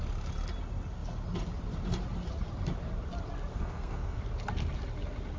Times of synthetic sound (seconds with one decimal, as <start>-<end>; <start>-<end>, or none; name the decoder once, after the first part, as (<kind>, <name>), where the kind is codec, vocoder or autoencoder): 3.5-4.2 (codec, SNAC)